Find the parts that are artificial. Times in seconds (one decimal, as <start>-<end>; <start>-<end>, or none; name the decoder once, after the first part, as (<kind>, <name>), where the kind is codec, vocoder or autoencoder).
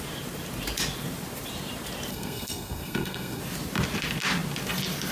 2.1-3.4 (codec, SNAC)